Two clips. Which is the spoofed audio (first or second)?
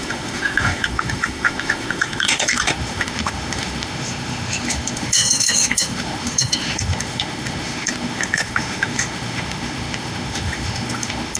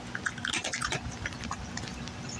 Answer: first